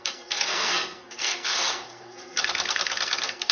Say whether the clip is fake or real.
fake